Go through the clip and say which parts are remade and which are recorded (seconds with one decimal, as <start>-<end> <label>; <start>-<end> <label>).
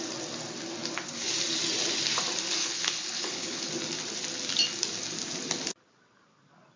0.0-2.6 recorded; 2.6-3.7 remade; 3.7-6.8 recorded